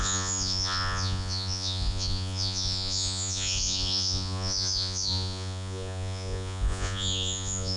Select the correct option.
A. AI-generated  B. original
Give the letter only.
A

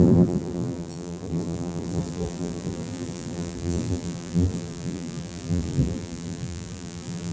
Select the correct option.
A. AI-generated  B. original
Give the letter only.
A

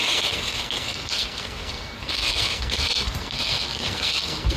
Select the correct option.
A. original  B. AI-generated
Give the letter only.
B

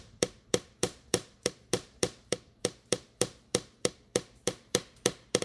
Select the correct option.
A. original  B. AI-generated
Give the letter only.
B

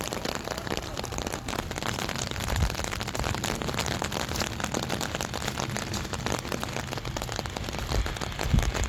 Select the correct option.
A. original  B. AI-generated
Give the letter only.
A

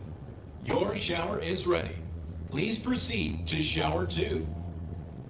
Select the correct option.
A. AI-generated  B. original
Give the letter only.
A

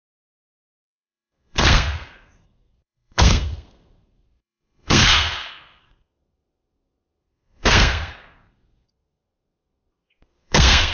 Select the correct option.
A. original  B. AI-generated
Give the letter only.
B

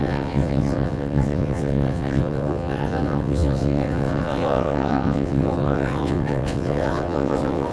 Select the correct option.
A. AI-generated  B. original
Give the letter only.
A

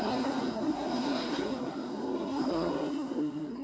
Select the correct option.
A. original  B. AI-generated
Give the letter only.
B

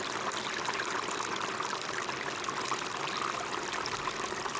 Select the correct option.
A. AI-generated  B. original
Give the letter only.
B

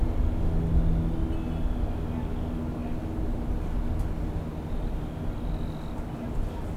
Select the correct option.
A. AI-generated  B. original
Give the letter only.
B